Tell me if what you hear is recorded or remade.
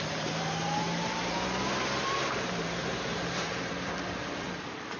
remade